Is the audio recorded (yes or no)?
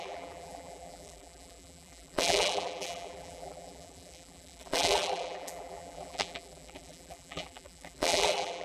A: no